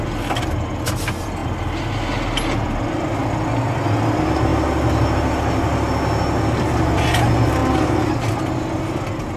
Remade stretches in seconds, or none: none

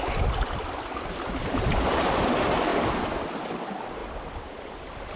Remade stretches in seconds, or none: 0.0-2.7 (vocoder, BigVGAN v2); 3.3-5.2

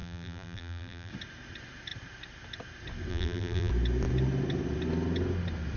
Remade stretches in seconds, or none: 0.0-1.1 (vocoder, BigVGAN v2); 3.1-3.7

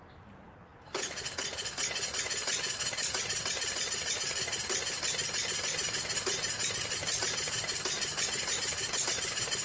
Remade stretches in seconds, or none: none